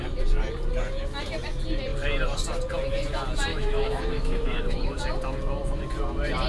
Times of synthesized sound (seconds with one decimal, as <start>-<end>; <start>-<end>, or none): 3.5-5.0